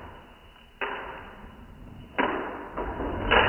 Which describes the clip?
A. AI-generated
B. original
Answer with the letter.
B